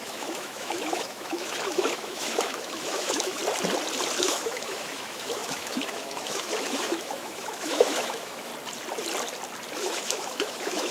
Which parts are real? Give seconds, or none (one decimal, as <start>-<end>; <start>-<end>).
3.4-4.2; 8.5-9.8